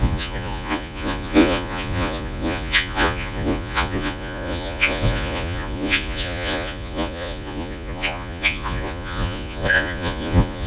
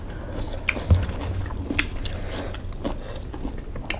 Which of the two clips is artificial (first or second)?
first